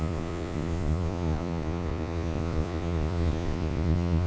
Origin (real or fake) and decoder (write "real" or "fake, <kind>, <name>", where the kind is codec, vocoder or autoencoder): fake, vocoder, Vocos